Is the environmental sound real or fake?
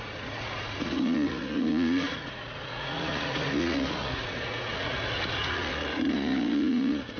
fake